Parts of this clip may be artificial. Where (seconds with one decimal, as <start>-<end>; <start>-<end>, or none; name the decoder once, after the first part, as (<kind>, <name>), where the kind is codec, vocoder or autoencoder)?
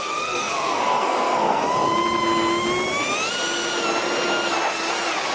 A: 0.0-1.6 (codec, SNAC)